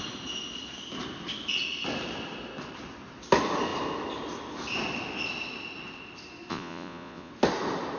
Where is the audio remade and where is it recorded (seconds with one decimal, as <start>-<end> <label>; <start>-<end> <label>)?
0.0-6.5 recorded; 6.5-7.3 remade; 7.3-8.0 recorded